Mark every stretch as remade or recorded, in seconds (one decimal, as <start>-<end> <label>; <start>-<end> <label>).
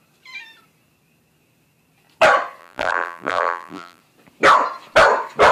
0.0-2.6 recorded; 2.6-4.0 remade; 4.0-5.5 recorded